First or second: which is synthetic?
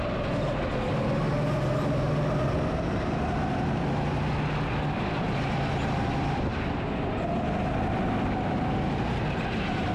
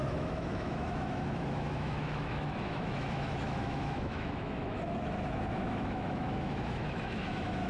second